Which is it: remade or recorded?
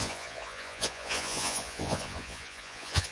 remade